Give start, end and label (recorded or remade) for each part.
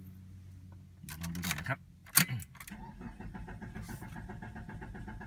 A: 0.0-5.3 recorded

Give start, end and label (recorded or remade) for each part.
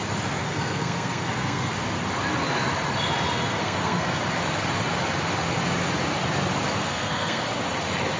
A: 0.0-0.4 recorded; 0.4-1.7 remade; 1.7-3.6 recorded; 3.6-4.2 remade; 4.2-6.8 recorded; 6.8-7.4 remade; 7.4-8.2 recorded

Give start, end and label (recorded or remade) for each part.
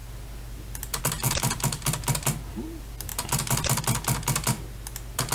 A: 0.0-5.3 recorded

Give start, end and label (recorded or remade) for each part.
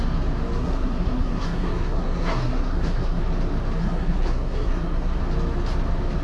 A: 0.0-0.6 recorded; 0.6-3.2 remade; 3.2-3.8 recorded; 3.8-5.2 remade; 5.2-6.2 recorded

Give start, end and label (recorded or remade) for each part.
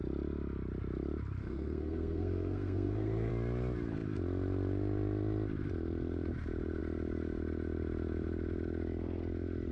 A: 0.0-1.4 recorded; 1.4-3.3 remade; 3.3-9.7 recorded